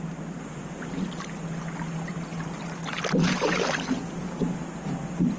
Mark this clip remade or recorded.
recorded